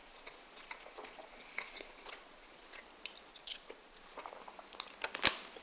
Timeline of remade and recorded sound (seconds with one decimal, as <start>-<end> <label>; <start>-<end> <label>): 0.0-2.8 remade; 2.8-3.3 recorded; 3.3-4.2 remade; 4.2-5.6 recorded